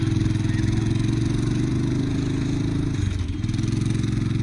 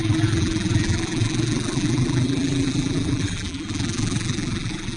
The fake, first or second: second